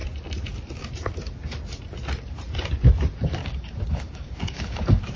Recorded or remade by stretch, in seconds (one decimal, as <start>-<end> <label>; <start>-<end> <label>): 0.0-3.4 recorded; 3.4-5.2 remade